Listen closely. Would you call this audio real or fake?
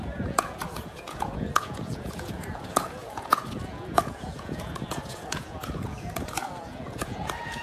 fake